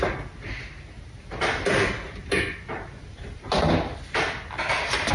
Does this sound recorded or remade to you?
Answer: recorded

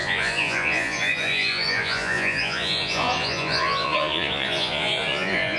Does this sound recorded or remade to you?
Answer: remade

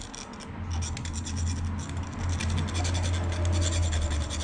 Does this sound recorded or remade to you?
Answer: recorded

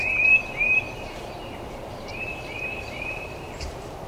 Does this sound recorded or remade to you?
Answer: remade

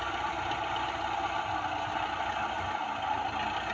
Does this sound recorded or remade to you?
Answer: recorded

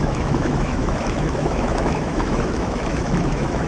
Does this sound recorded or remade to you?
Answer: remade